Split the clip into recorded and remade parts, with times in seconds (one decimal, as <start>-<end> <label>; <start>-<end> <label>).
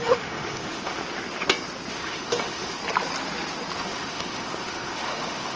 0.0-1.0 remade; 1.0-1.9 recorded; 1.9-2.8 remade; 2.8-3.8 recorded; 3.8-5.6 remade